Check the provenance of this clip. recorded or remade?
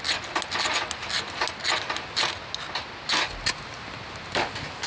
recorded